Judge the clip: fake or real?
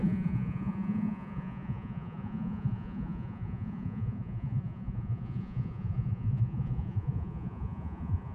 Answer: fake